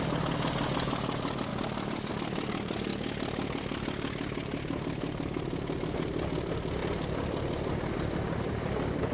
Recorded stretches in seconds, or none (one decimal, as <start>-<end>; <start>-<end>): 0.0-9.1